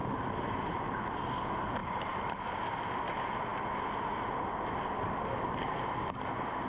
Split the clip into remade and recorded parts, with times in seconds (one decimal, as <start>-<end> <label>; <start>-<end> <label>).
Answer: 0.0-1.8 recorded; 1.8-3.0 remade; 3.0-6.7 recorded